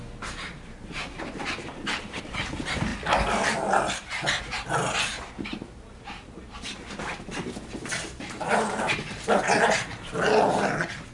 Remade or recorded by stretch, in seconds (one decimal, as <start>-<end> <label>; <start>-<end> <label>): 0.0-2.9 remade; 2.9-4.4 recorded; 4.4-11.1 remade